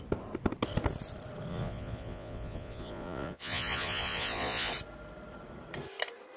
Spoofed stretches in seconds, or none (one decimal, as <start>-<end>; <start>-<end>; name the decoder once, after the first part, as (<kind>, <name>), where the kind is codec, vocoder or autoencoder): 1.5-4.7 (vocoder, Vocos)